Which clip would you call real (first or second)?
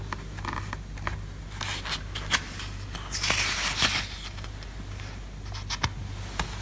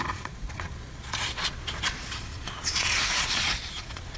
first